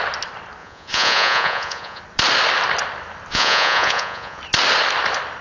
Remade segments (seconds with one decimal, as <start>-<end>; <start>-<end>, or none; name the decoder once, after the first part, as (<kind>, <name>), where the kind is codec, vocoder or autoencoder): 0.6-2.0 (vocoder, Vocos); 3.3-4.4